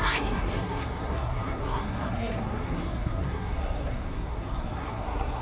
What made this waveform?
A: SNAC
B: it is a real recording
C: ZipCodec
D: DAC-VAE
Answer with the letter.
A